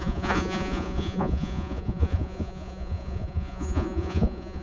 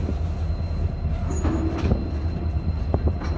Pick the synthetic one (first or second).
first